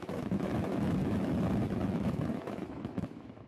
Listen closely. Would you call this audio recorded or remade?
remade